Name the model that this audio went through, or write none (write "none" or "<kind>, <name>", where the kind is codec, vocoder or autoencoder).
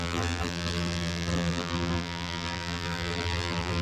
vocoder, BigVGAN v2